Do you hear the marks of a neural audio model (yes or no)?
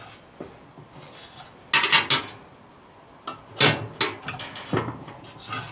no